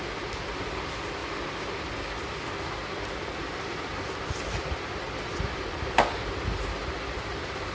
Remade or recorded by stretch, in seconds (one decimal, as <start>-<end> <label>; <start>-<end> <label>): 0.0-7.7 recorded